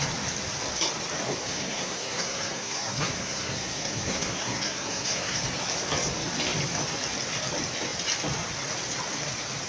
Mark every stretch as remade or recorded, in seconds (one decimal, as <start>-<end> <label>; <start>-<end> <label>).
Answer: 0.0-1.4 recorded; 1.4-5.4 remade; 5.4-9.7 recorded